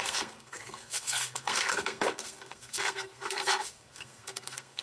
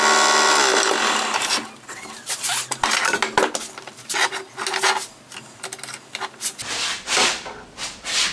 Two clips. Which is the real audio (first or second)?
second